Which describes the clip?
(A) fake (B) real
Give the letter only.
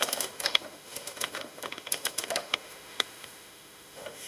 A